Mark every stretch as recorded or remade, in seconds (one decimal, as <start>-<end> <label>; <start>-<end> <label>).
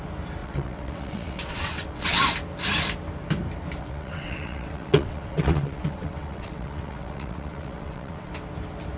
0.0-0.4 recorded; 0.4-2.3 remade; 2.3-3.8 recorded; 3.8-8.3 remade; 8.3-9.0 recorded